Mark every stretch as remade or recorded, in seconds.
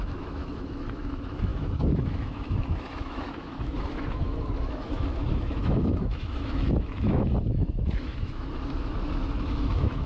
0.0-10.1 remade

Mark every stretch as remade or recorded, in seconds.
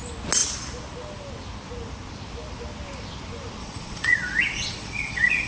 0.0-3.6 recorded; 3.6-5.5 remade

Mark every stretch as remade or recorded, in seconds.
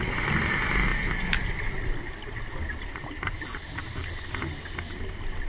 0.0-5.5 recorded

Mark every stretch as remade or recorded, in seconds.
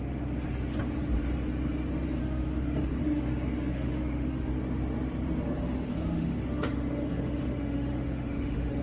0.0-2.2 recorded; 2.2-3.0 remade; 3.0-3.7 recorded; 3.7-4.5 remade; 4.5-5.9 recorded; 5.9-8.8 remade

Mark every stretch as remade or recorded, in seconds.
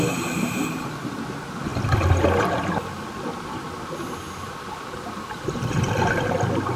0.0-6.8 recorded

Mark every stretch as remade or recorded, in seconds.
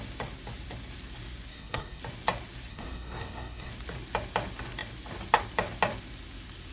0.0-1.5 recorded; 1.5-2.0 remade; 2.0-2.7 recorded; 2.7-3.7 remade; 3.7-6.7 recorded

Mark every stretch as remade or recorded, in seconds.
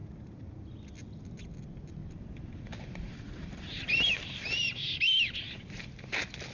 0.0-0.6 remade; 0.6-2.0 recorded; 2.0-5.9 remade; 5.9-6.5 recorded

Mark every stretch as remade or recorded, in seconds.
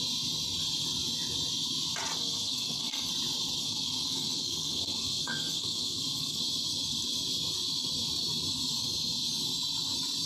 0.0-2.2 recorded; 2.2-3.1 remade; 3.1-3.6 recorded; 3.6-6.4 remade; 6.4-10.3 recorded